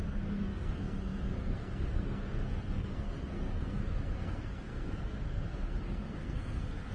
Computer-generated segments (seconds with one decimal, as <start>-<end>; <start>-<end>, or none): 0.0-6.9